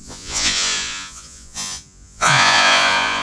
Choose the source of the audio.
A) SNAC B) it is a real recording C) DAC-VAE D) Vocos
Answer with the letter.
D